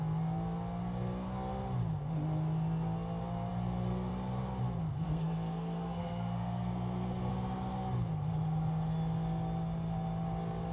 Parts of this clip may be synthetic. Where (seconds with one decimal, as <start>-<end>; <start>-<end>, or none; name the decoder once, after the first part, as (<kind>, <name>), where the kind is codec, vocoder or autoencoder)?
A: 4.8-7.3 (codec, SNAC)